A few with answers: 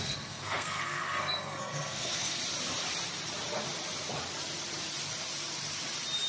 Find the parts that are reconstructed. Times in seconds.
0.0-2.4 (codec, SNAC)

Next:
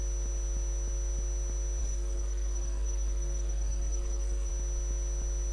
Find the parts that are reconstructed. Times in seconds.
1.8-4.5 (codec, SNAC)